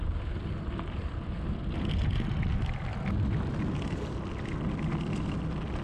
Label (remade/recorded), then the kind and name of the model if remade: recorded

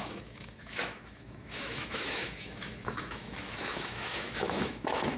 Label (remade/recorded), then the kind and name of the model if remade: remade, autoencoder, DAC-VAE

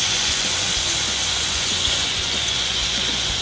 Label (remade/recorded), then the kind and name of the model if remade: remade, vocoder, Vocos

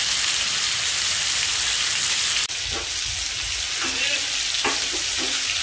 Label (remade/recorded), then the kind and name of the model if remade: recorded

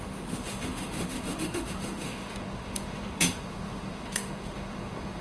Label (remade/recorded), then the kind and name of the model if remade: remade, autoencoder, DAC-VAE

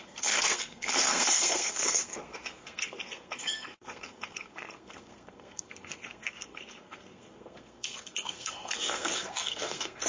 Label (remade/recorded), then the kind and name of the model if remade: remade, codec, SNAC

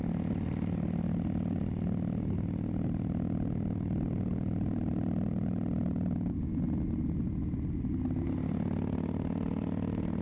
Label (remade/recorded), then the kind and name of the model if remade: recorded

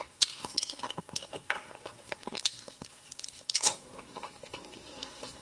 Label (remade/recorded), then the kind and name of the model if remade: remade, codec, SNAC